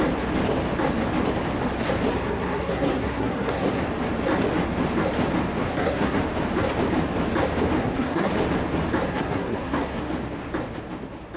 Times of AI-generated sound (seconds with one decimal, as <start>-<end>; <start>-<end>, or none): 2.1-3.8; 5.6-6.2; 7.8-8.3; 9.1-10.0